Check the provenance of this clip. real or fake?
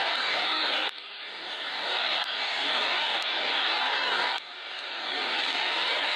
fake